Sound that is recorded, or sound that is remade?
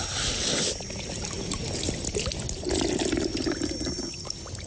recorded